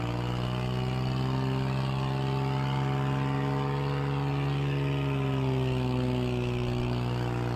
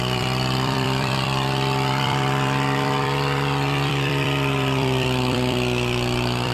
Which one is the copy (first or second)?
second